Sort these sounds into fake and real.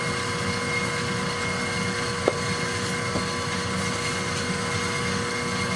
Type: real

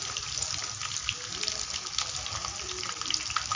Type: real